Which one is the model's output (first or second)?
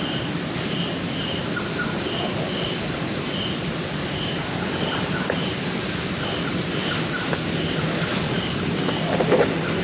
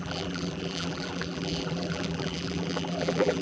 second